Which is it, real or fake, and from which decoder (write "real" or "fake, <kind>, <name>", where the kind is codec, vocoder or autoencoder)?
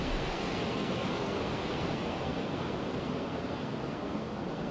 fake, codec, SNAC